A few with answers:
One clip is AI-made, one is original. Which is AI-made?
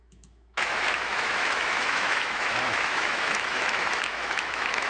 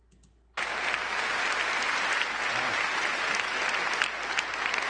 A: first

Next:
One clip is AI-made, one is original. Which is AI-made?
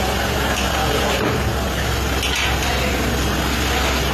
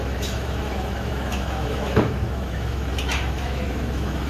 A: second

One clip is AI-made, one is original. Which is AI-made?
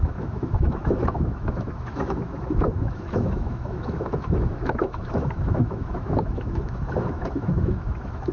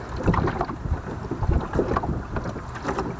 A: first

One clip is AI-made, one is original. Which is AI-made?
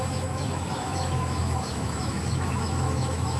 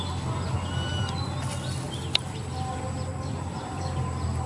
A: first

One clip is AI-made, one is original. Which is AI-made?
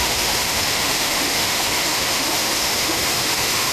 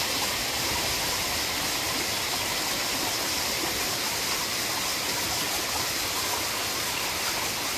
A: first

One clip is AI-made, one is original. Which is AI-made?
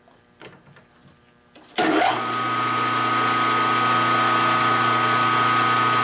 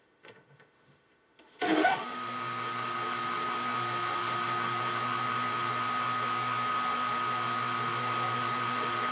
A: second